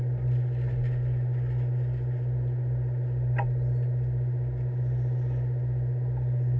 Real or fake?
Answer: real